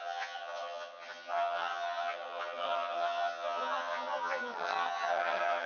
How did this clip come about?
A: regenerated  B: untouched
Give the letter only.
A